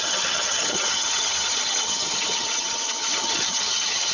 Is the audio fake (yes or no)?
yes